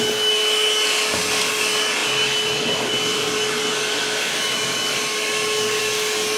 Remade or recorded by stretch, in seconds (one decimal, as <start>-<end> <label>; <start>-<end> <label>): 0.0-6.4 remade